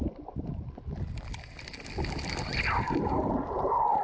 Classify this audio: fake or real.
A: real